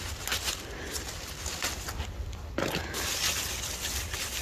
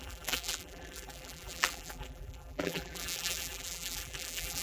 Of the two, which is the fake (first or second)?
second